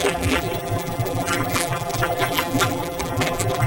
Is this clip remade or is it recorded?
remade